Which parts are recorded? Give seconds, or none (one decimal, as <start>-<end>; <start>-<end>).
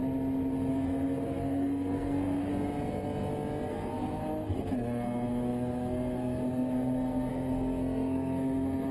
0.0-0.7; 2.5-3.7